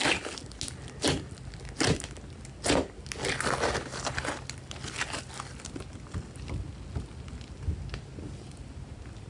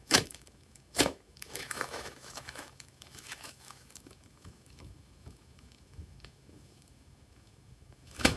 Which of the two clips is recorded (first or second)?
first